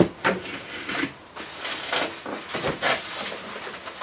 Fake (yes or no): no